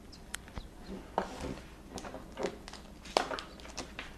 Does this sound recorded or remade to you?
recorded